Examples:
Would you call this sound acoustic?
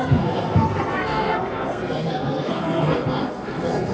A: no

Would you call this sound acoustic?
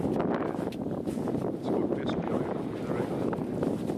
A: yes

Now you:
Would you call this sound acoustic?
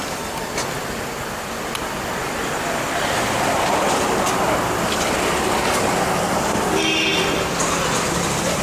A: yes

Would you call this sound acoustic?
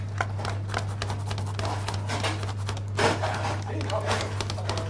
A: yes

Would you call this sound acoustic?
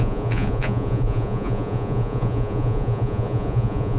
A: no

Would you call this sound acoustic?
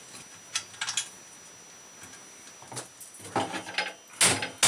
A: yes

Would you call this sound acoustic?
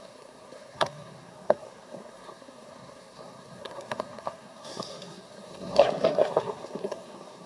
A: no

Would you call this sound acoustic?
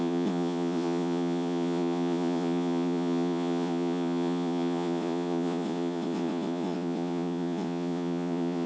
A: no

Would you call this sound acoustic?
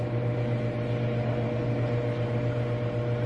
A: yes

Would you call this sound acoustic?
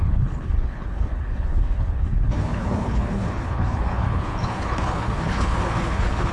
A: no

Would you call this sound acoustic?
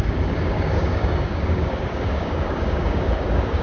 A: no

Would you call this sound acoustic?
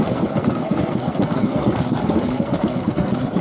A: no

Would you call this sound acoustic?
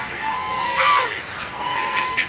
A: no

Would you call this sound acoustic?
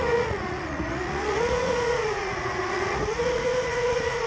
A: no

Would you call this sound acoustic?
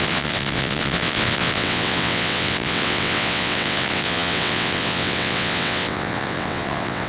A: no